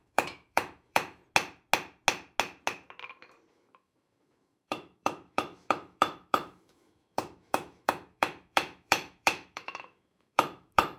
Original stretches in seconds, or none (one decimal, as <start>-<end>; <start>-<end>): 1.2-3.5